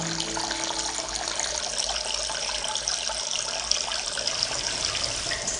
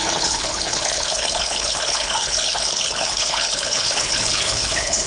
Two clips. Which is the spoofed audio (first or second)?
second